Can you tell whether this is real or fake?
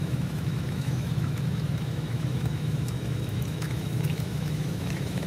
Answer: fake